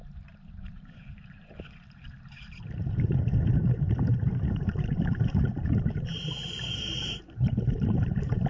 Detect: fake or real fake